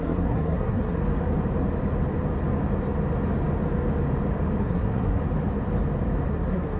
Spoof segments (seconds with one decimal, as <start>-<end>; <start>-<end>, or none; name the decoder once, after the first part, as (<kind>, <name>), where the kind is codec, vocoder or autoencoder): 0.0-1.0 (codec, SNAC); 4.6-5.2; 6.3-6.8